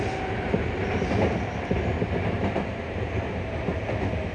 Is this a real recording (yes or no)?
yes